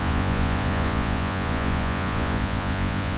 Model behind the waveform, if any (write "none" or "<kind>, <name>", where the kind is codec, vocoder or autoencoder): vocoder, Vocos